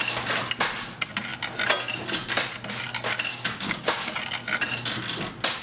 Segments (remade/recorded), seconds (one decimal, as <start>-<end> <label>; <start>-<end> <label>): 0.0-3.3 recorded; 3.3-4.1 remade; 4.1-5.6 recorded